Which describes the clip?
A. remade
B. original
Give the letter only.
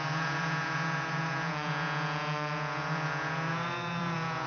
A